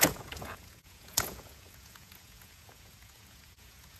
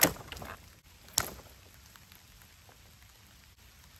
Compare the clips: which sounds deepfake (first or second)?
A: first